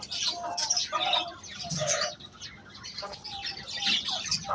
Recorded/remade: recorded